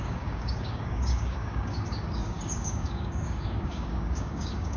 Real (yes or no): no